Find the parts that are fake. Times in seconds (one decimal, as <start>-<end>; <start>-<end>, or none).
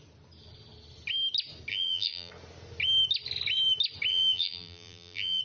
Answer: 1.7-2.3; 4.1-5.4